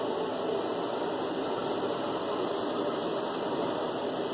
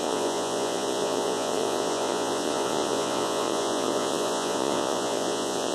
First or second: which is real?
first